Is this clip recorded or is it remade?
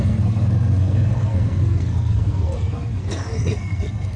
remade